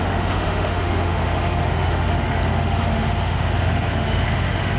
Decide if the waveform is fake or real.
fake